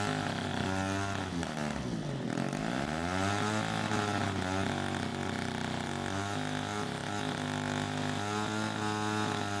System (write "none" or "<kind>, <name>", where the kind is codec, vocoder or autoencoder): none